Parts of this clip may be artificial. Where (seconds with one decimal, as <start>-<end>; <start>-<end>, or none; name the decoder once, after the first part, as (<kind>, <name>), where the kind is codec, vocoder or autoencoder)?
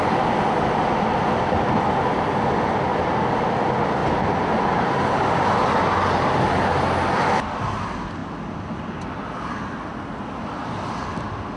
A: 2.9-3.6 (vocoder, BigVGAN v2); 4.0-4.9